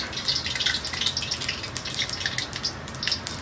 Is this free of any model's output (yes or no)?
yes